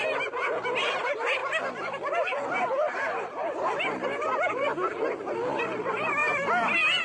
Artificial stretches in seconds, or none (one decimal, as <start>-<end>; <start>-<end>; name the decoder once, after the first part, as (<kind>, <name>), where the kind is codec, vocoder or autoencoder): none